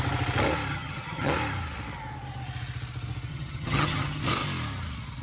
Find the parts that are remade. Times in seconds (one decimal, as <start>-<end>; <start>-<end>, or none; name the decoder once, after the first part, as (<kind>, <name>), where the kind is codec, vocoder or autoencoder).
0.7-1.3 (vocoder, HiFi-GAN); 3.3-4.2